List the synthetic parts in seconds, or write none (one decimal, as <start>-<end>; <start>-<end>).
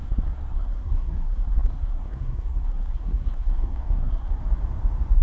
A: 0.0-4.4